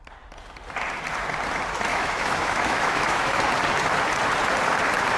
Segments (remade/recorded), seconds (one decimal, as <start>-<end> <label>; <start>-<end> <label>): 0.0-1.9 recorded; 1.9-3.4 remade; 3.4-5.2 recorded